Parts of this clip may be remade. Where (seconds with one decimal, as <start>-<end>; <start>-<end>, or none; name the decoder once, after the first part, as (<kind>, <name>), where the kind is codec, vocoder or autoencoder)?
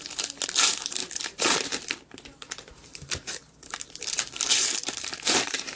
0.0-5.8 (vocoder, BigVGAN v2)